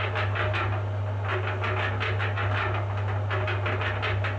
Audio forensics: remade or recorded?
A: recorded